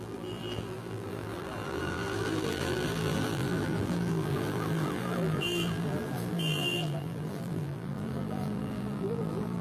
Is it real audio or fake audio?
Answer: fake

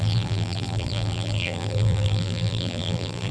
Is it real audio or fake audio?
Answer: fake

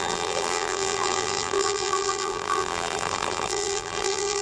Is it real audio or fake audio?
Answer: fake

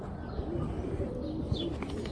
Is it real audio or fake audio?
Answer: real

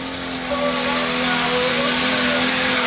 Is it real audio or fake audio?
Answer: real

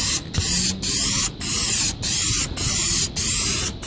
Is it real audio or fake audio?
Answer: real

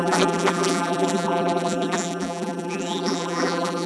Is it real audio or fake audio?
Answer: fake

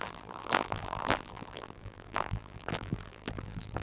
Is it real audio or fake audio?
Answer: fake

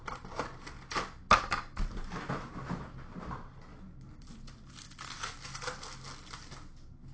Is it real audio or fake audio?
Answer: real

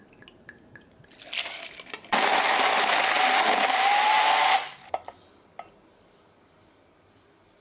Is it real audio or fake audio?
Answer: real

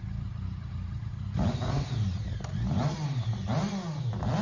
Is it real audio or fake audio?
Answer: real